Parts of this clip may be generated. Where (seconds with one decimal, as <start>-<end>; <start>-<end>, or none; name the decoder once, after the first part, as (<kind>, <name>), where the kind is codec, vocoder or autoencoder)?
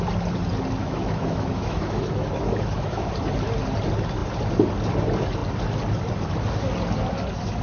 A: 0.8-3.1 (autoencoder, DAC-VAE)